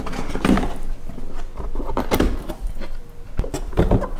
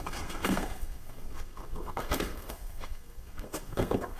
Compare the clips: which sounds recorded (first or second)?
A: first